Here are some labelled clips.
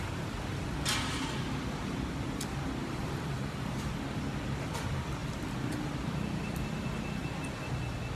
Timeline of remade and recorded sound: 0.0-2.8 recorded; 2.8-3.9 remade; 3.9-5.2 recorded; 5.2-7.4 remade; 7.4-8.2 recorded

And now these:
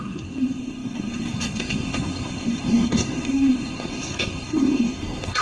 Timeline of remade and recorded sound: 0.0-5.4 remade

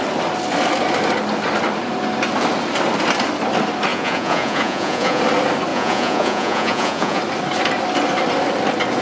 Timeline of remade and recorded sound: 0.0-3.9 recorded; 3.9-5.2 remade; 5.2-5.7 recorded; 5.7-7.2 remade; 7.2-9.0 recorded